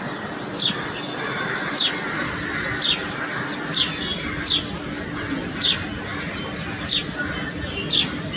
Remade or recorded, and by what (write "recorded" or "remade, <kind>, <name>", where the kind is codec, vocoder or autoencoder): recorded